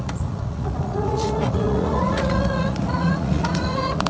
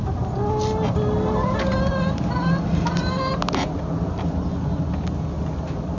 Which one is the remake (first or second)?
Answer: first